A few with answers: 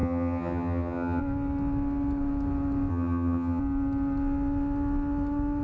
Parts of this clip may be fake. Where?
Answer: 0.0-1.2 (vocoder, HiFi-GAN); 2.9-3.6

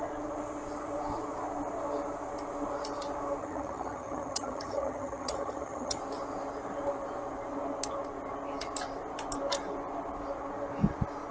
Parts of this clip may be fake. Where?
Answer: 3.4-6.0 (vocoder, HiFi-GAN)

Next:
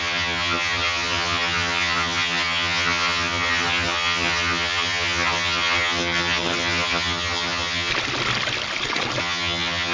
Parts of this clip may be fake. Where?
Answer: 0.0-7.9 (vocoder, HiFi-GAN); 9.2-9.9